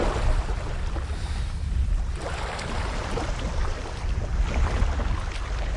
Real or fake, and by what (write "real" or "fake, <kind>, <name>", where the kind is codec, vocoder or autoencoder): real